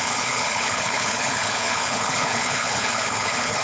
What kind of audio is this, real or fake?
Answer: fake